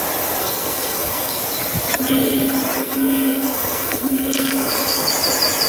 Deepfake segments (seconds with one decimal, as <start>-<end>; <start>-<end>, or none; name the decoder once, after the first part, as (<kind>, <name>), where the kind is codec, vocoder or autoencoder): 0.4-1.4 (codec, SNAC); 2.8-5.1

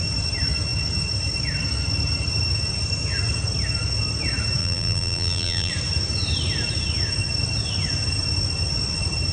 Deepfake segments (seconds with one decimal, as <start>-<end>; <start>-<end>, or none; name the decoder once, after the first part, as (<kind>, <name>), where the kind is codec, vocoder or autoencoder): 4.6-5.7 (vocoder, BigVGAN v2)

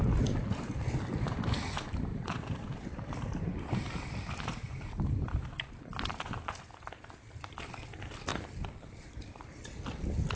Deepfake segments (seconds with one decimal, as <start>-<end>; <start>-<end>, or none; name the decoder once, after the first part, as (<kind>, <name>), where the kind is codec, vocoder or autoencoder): 2.1-5.7 (vocoder, BigVGAN v2); 8.3-8.9

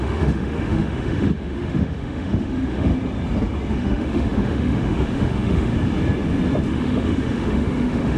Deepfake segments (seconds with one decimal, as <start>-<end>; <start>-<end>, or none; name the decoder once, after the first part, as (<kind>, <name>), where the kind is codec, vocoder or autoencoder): 0.0-2.9 (autoencoder, DAC-VAE); 3.7-5.7; 6.7-8.2

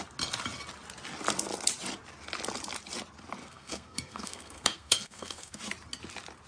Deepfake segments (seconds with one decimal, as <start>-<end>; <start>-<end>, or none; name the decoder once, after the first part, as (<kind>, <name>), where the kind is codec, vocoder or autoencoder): 3.4-5.6 (codec, SNAC)

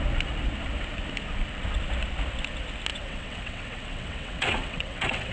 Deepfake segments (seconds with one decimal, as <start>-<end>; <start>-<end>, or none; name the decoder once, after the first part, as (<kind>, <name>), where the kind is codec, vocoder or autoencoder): 2.9-5.3 (vocoder, WaveNeXt)